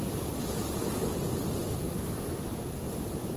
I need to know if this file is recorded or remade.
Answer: recorded